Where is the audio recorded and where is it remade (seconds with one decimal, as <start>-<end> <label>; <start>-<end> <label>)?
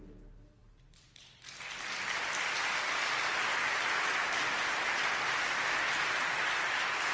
0.0-7.1 recorded